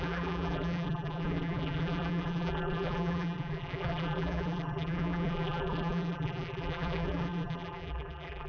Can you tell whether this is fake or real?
fake